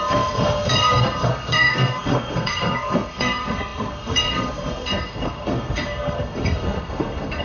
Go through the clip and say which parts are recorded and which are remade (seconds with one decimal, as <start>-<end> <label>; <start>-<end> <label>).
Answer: 0.0-7.4 remade